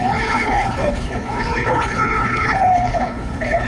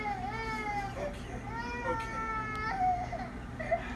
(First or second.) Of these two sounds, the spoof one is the first